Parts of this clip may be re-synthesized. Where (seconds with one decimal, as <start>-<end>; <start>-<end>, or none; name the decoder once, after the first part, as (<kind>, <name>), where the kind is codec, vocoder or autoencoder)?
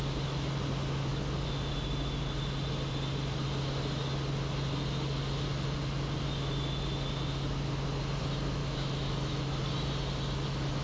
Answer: 8.6-9.6 (autoencoder, DAC-VAE)